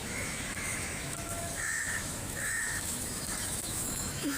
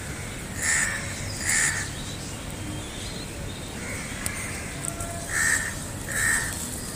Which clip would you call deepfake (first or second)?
first